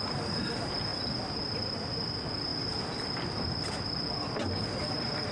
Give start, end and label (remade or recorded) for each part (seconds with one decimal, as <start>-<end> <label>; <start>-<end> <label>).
0.0-5.3 recorded